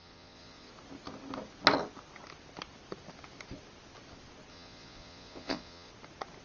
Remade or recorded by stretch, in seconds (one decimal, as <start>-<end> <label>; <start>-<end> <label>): 0.0-0.7 remade; 0.7-4.5 recorded; 4.5-5.9 remade; 5.9-6.4 recorded